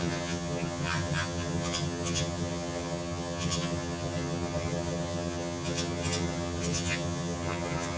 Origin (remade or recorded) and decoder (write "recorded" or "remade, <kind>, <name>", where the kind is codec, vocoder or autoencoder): remade, vocoder, HiFi-GAN